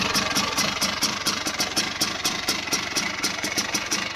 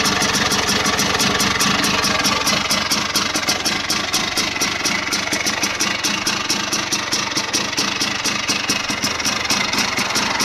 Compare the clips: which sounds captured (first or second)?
second